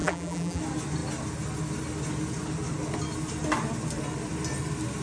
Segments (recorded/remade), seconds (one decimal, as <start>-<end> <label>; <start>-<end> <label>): 0.0-0.6 remade; 0.6-5.0 recorded